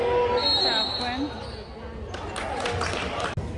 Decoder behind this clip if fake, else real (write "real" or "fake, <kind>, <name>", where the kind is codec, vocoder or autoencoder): real